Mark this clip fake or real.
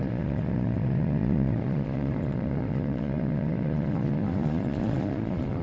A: fake